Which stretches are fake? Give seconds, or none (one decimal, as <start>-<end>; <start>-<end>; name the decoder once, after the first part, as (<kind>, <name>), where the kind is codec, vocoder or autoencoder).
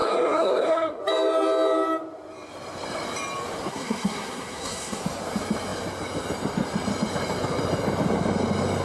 0.0-1.0 (codec, SNAC); 3.7-5.0